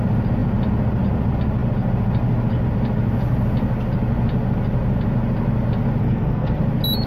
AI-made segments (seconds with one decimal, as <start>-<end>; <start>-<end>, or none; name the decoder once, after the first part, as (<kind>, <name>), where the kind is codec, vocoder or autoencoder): 6.0-6.6 (codec, SNAC)